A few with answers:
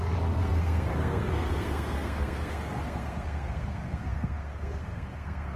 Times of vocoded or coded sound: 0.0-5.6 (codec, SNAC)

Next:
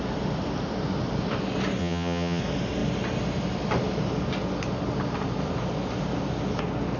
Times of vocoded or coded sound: 1.8-2.4 (vocoder, HiFi-GAN)

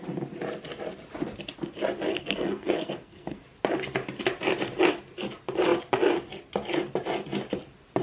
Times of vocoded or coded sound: 2.1-3.4 (codec, SNAC)

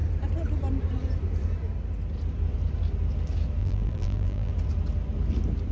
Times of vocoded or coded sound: 3.6-4.5 (vocoder, BigVGAN v2)

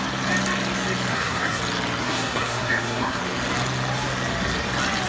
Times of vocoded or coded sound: 1.1-1.6 (codec, SNAC); 2.0-3.2

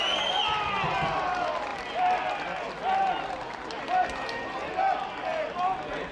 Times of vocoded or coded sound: none

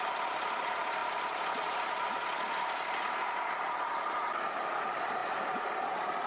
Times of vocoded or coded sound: none

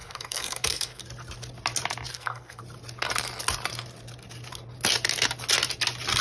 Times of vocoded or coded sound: 0.0-1.0 (codec, SNAC); 2.1-2.6